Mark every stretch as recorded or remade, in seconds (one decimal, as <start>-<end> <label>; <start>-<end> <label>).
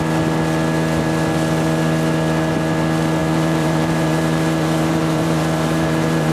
0.0-3.2 recorded; 3.2-6.3 remade